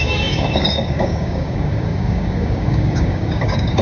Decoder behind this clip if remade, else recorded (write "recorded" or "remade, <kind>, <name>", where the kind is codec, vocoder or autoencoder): remade, codec, DAC